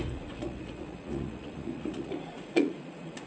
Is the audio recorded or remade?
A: remade